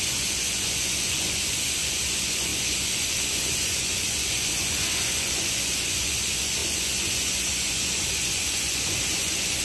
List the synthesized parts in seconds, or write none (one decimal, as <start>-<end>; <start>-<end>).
0.0-9.6